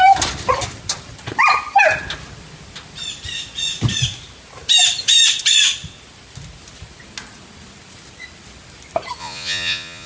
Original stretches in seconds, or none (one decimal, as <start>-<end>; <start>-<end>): 0.0-9.2